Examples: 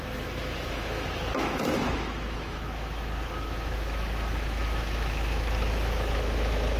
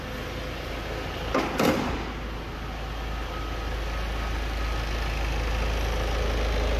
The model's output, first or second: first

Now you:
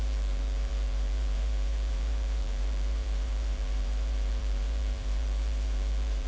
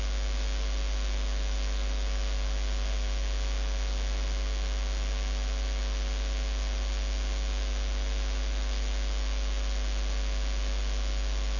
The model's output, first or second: first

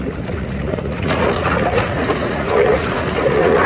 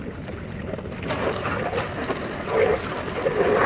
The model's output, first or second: first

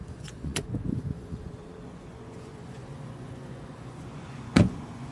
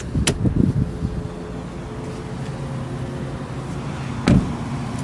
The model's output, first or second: first